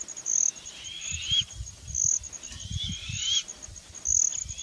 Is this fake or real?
real